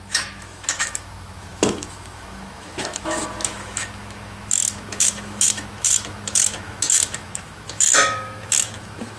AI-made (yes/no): yes